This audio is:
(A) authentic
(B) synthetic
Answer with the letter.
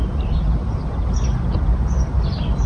A